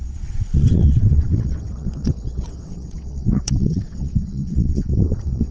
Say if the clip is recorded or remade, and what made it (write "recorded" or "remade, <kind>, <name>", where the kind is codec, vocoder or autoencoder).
remade, vocoder, WaveNeXt